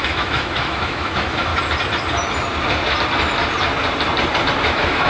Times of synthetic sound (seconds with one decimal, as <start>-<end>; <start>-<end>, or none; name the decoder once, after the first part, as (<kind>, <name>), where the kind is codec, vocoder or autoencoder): 0.0-1.5 (autoencoder, DAC-VAE); 4.6-5.1